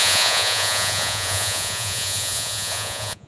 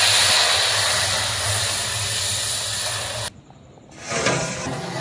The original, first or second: second